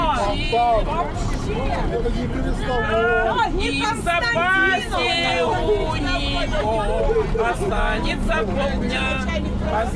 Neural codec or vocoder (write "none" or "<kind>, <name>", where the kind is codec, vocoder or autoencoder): none